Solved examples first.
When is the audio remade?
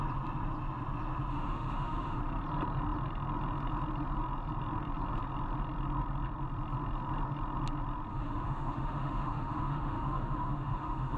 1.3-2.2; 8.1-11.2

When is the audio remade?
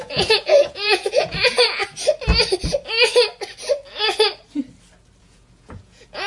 0.0-1.8; 5.2-6.3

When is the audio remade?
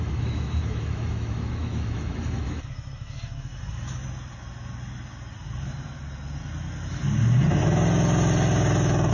0.0-4.0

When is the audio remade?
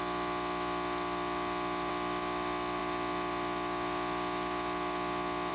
none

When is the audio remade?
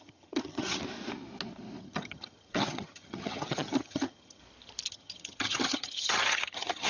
0.0-0.8; 1.8-4.4; 4.9-6.9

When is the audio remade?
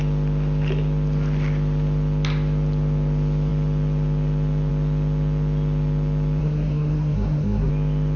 6.4-7.7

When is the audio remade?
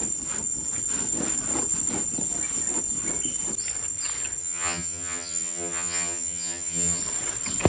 4.4-7.0